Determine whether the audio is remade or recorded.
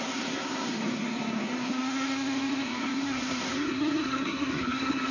remade